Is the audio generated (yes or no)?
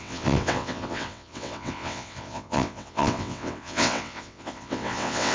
yes